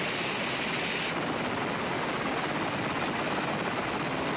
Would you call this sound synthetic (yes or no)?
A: no